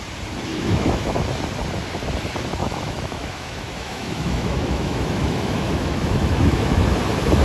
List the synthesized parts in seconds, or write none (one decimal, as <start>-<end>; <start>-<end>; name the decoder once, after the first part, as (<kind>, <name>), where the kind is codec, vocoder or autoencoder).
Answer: 0.5-1.1 (autoencoder, DAC-VAE); 2.6-6.8